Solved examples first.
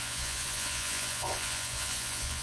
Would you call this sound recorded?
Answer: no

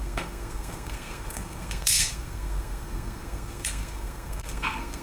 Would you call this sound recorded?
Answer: no